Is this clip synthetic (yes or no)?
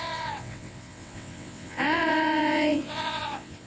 yes